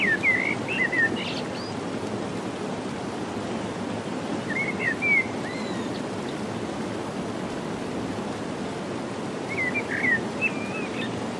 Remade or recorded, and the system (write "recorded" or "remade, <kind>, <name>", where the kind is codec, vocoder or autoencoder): recorded